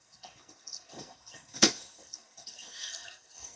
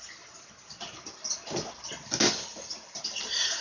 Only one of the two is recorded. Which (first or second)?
second